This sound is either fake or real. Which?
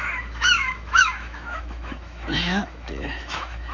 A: fake